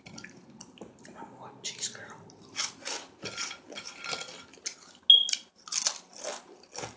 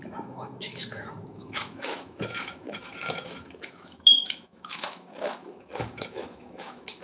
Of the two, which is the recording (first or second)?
first